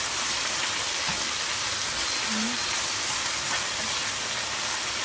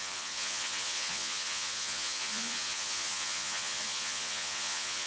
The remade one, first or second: second